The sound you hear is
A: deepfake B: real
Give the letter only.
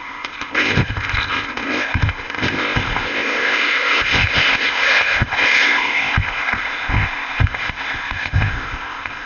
A